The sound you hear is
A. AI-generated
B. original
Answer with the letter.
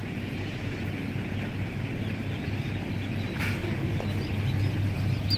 B